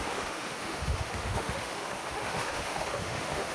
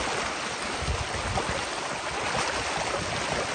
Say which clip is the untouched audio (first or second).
second